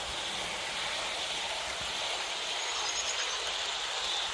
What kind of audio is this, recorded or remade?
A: recorded